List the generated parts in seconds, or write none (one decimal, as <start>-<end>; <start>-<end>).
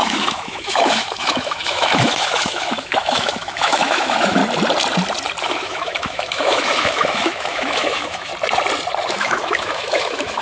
0.0-4.4; 5.4-8.3; 9.1-10.4